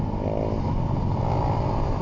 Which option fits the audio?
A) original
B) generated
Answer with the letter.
A